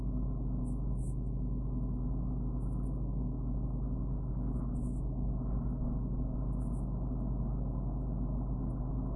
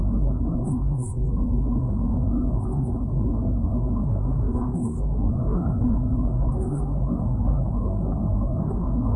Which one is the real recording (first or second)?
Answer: first